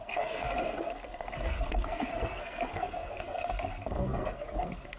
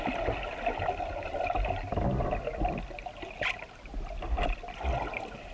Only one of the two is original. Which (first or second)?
second